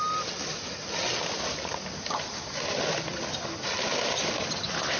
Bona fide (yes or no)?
yes